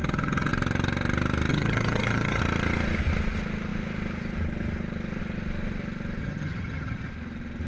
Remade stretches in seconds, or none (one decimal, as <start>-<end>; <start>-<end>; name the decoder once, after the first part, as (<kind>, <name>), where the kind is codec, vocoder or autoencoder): 0.0-0.5 (vocoder, HiFi-GAN); 1.5-2.4; 6.2-7.1